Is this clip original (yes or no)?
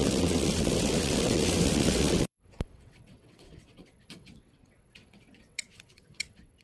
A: no